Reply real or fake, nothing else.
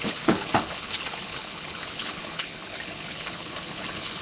fake